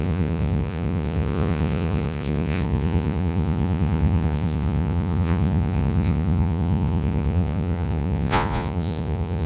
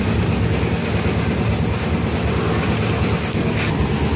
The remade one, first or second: first